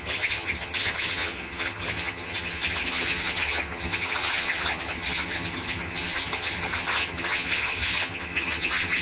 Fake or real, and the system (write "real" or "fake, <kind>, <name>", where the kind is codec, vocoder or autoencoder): fake, vocoder, HiFi-GAN